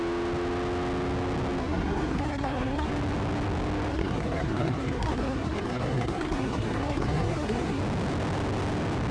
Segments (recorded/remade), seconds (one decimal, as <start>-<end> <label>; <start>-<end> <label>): 0.0-1.6 recorded; 1.6-2.9 remade; 2.9-3.9 recorded; 3.9-7.8 remade; 7.8-9.1 recorded